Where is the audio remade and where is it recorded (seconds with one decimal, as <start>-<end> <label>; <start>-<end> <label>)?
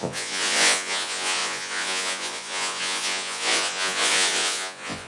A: 0.0-5.1 remade